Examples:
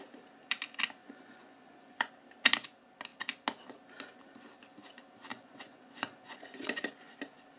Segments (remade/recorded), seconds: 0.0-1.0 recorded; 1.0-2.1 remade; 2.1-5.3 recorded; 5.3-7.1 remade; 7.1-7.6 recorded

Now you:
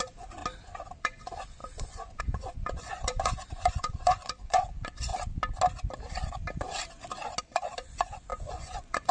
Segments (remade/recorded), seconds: 0.0-0.4 remade; 0.4-1.0 recorded; 1.0-5.1 remade; 5.1-7.4 recorded; 7.4-9.1 remade

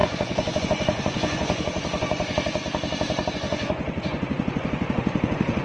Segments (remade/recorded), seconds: 0.0-2.6 remade; 2.6-3.3 recorded; 3.3-5.6 remade

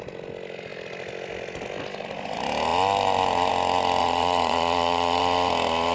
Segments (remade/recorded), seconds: 0.0-4.0 recorded; 4.0-5.2 remade; 5.2-5.9 recorded

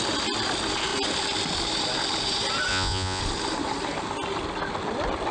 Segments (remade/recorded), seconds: 0.0-2.7 recorded; 2.7-3.2 remade; 3.2-5.3 recorded